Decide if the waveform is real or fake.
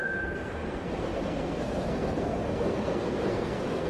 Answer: fake